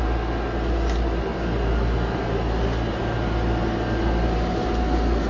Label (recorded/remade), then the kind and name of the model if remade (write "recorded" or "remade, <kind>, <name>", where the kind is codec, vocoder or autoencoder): recorded